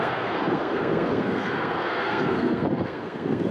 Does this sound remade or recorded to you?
remade